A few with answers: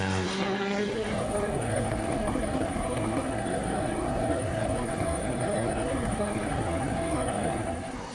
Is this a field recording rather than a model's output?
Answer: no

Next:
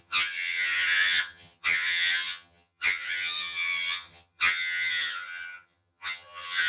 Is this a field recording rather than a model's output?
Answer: no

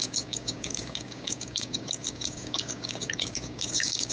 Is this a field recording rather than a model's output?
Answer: no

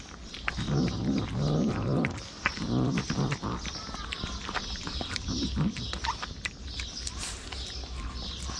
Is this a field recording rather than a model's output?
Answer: yes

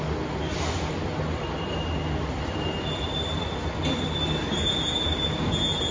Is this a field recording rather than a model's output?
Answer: yes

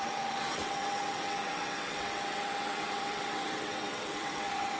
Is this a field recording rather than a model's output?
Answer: no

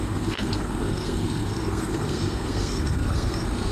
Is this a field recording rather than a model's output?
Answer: no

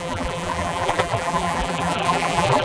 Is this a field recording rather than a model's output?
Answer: no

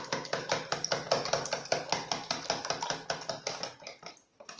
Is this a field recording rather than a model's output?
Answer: yes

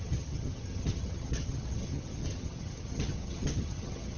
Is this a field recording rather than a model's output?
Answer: no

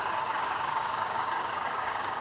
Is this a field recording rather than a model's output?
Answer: no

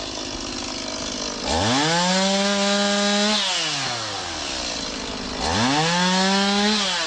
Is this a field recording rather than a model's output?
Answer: yes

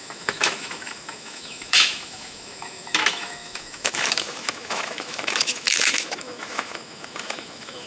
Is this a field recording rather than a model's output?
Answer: no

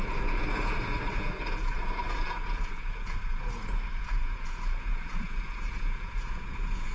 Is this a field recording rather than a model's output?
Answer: no